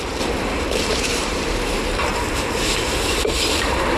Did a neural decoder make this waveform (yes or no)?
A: yes